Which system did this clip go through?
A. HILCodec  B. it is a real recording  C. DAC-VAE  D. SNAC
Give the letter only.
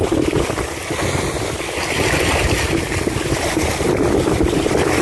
B